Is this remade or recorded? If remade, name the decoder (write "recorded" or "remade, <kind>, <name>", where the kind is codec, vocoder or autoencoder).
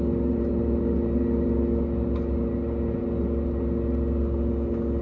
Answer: recorded